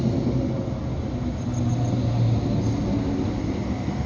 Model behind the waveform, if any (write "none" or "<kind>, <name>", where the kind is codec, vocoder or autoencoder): none